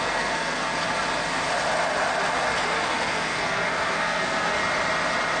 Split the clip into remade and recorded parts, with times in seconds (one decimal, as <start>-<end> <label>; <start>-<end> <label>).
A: 0.0-0.7 remade; 0.7-2.6 recorded; 2.6-4.6 remade; 4.6-5.4 recorded